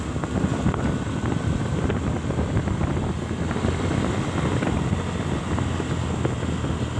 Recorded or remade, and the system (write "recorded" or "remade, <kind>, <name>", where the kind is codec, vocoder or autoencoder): recorded